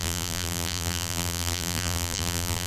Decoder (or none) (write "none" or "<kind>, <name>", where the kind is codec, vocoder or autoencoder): vocoder, BigVGAN v2